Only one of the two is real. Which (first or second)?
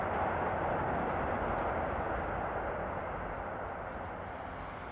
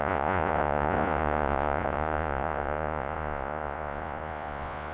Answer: first